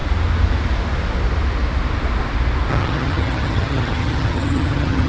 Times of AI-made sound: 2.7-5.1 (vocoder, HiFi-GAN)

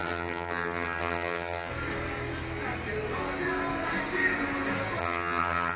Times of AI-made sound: 0.0-1.7 (vocoder, HiFi-GAN); 5.0-5.8

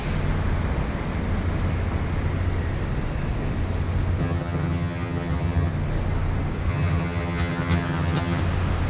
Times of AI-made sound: 4.2-5.7 (vocoder, HiFi-GAN); 6.7-8.4

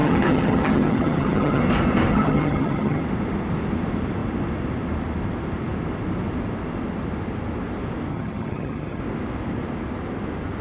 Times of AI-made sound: 0.0-1.6 (vocoder, HiFi-GAN); 2.1-3.0; 8.1-9.0

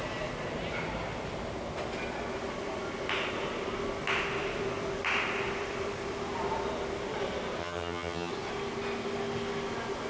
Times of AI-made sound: 7.6-8.3 (vocoder, HiFi-GAN)

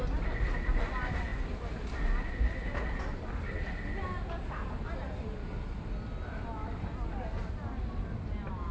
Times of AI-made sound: none

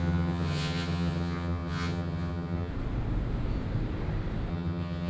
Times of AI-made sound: 0.0-2.7 (vocoder, HiFi-GAN); 4.5-5.1